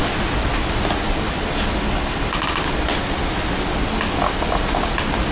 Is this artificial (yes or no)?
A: no